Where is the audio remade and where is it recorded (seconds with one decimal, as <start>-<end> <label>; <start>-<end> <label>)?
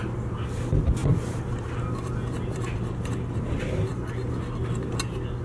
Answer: 0.0-5.4 recorded